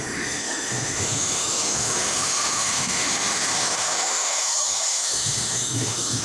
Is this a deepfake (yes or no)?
yes